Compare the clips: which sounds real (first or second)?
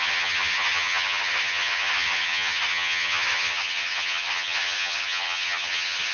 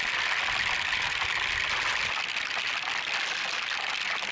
second